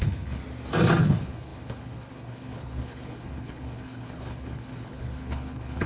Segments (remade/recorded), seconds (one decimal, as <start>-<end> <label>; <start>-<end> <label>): 0.0-0.4 remade; 0.4-1.0 recorded; 1.0-5.9 remade